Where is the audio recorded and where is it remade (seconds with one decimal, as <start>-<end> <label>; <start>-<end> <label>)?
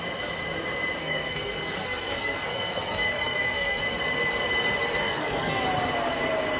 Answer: 0.0-1.0 recorded; 1.0-3.8 remade; 3.8-5.0 recorded; 5.0-5.6 remade; 5.6-6.6 recorded